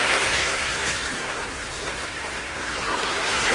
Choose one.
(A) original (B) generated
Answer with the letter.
B